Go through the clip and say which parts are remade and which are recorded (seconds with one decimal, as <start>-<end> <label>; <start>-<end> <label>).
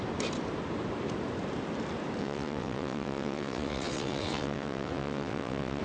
0.0-2.2 recorded; 2.2-5.8 remade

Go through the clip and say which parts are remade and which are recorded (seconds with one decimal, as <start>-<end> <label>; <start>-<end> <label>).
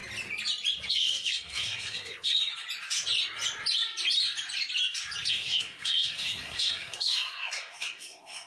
0.0-0.9 recorded; 0.9-2.5 remade; 2.5-5.3 recorded; 5.3-8.5 remade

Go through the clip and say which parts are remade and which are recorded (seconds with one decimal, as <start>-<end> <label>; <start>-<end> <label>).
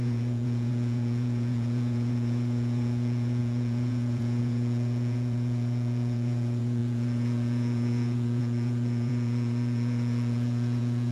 0.0-11.1 remade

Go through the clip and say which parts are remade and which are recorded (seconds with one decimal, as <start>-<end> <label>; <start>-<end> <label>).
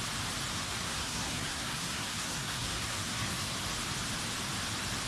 0.0-0.5 recorded; 0.5-3.6 remade; 3.6-5.1 recorded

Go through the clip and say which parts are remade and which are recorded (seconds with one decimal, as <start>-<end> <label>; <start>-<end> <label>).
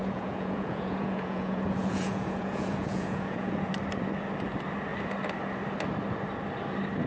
0.0-3.7 remade; 3.7-7.1 recorded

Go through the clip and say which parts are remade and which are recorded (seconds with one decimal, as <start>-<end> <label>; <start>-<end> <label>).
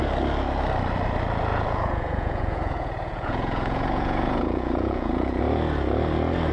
0.0-1.5 recorded; 1.5-5.4 remade; 5.4-6.5 recorded